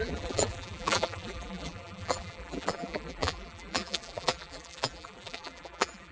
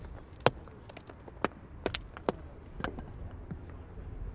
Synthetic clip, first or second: first